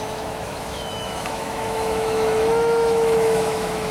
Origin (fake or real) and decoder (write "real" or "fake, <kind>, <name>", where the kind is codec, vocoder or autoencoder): fake, autoencoder, DAC-VAE